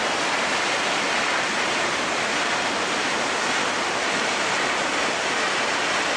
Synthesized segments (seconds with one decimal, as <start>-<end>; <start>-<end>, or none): none